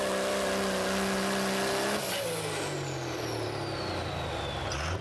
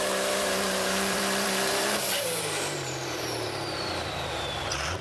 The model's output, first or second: second